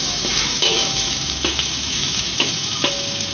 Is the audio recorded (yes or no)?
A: no